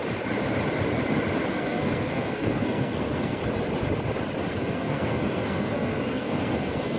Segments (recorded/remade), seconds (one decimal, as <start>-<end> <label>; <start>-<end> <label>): 0.0-1.5 recorded; 1.5-3.4 remade; 3.4-4.5 recorded; 4.5-7.0 remade